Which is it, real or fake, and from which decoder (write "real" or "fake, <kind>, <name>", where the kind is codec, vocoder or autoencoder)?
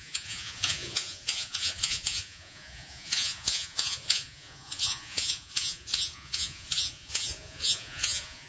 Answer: fake, vocoder, Vocos